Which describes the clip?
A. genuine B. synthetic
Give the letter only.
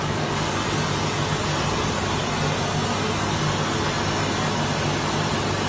A